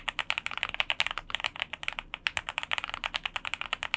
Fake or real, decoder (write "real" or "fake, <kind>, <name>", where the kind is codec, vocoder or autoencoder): real